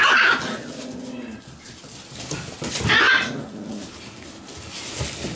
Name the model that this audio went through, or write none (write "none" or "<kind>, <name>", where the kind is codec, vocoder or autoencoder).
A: none